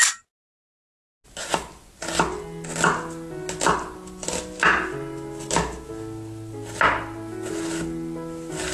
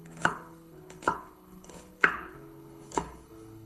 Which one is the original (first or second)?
first